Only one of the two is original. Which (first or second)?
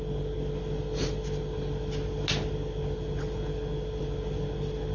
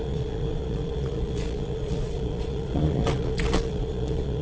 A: first